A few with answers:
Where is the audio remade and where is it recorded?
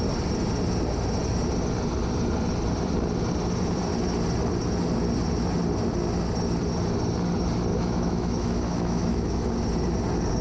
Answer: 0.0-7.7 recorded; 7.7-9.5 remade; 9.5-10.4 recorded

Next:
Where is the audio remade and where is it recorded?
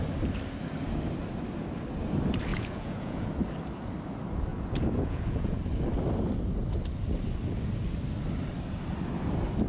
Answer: 0.0-2.5 recorded; 2.5-3.3 remade; 3.3-4.5 recorded; 4.5-5.6 remade; 5.6-9.7 recorded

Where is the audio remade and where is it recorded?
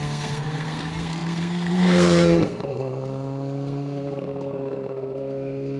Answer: 0.0-5.8 remade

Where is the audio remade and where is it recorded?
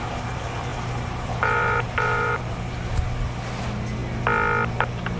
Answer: 0.0-0.7 recorded; 0.7-3.0 remade; 3.0-5.2 recorded